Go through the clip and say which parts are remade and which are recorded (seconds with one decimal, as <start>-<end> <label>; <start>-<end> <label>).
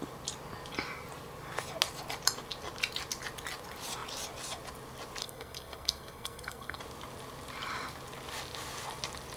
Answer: 0.0-5.2 recorded; 5.2-6.8 remade; 6.8-9.4 recorded